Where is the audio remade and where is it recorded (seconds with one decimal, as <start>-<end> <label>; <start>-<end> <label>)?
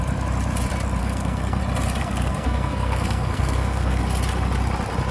0.0-1.0 recorded; 1.0-1.6 remade; 1.6-2.0 recorded; 2.0-4.0 remade; 4.0-5.1 recorded